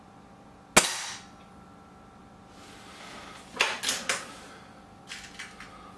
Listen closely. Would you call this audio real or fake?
real